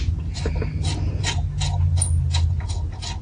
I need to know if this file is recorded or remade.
recorded